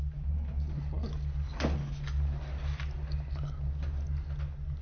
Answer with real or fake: real